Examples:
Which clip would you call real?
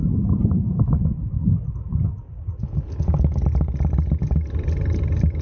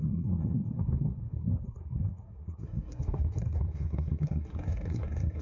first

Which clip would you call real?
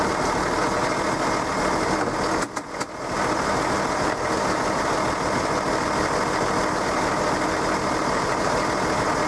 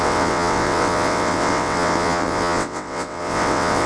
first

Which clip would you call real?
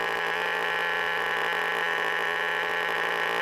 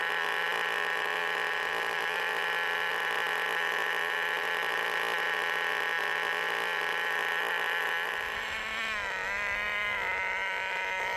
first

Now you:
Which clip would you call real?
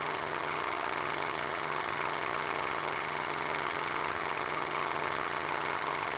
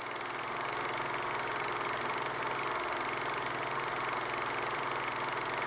second